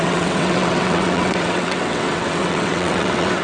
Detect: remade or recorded remade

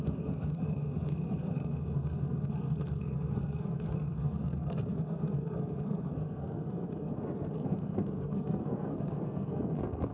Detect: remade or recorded remade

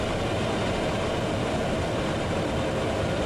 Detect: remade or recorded recorded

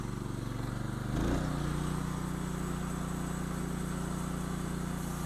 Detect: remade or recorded recorded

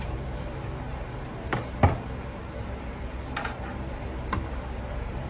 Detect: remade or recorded remade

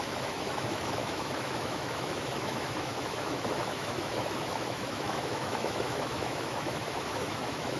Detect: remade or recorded remade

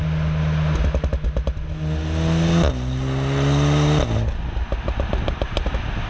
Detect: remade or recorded recorded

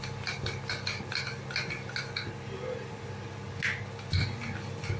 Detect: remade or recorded recorded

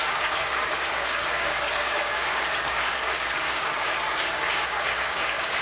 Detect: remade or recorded remade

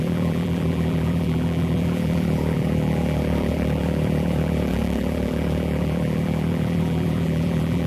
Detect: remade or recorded remade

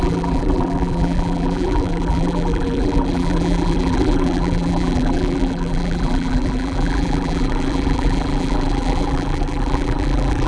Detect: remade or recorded remade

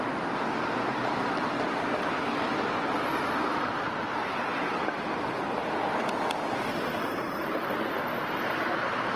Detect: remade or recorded recorded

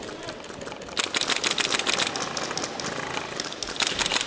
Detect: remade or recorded recorded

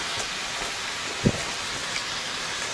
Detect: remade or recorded recorded